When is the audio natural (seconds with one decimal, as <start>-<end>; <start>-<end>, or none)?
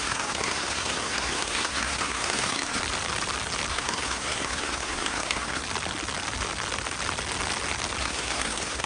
2.8-3.7; 5.6-8.0